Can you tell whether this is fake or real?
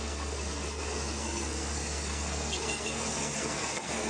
fake